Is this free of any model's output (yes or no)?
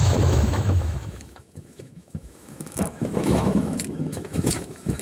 no